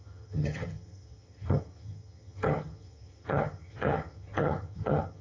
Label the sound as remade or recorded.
remade